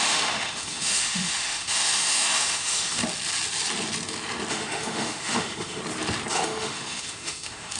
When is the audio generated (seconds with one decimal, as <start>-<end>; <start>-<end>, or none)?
0.0-3.0; 4.5-5.8; 6.3-7.8